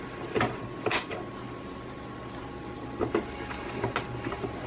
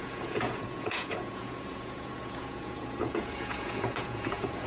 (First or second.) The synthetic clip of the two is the second